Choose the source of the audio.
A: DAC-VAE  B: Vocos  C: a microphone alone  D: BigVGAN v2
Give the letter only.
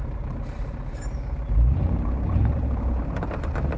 D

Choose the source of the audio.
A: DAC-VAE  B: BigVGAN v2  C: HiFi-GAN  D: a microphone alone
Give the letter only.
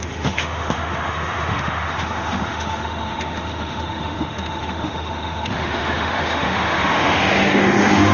A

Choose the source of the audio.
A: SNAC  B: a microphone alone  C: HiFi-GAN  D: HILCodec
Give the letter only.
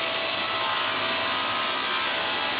B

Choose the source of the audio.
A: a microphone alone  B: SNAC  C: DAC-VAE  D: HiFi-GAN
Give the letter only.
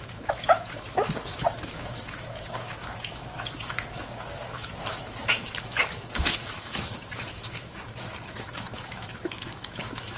C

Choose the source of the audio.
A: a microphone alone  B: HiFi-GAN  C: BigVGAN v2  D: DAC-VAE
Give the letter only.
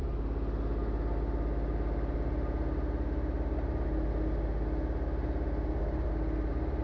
A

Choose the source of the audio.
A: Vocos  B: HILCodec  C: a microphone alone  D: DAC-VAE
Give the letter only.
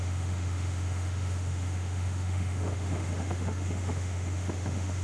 D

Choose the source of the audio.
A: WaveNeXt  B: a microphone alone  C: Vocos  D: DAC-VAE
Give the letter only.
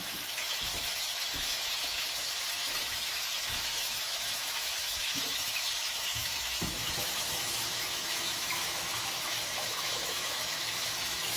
D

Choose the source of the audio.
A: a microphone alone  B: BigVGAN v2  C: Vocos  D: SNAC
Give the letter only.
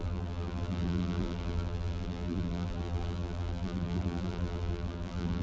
B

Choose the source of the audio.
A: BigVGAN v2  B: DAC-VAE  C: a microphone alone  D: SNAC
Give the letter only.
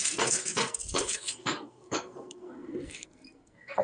D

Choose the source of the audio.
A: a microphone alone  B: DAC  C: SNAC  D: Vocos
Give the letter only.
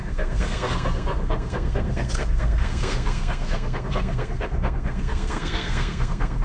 C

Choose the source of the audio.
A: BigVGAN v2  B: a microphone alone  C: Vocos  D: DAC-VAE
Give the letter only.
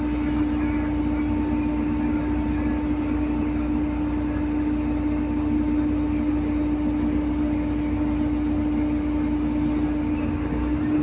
B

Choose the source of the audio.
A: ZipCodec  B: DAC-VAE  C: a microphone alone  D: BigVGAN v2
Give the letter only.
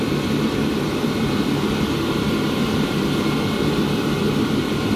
D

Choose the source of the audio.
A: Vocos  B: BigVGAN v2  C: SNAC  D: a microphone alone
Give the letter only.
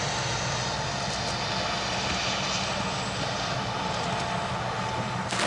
D